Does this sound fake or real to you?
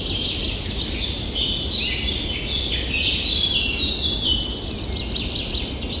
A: real